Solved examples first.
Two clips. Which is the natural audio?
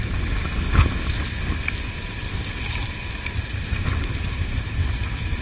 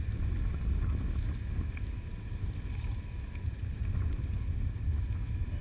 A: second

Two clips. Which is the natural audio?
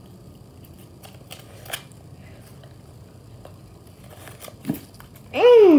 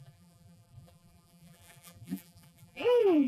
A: first